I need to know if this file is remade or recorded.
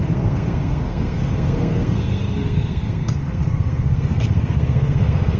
remade